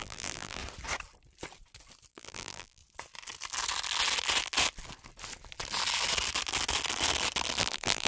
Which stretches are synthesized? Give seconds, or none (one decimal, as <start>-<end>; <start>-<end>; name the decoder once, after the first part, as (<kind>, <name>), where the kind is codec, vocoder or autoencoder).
0.0-0.6 (vocoder, BigVGAN v2); 2.1-2.8; 7.6-8.1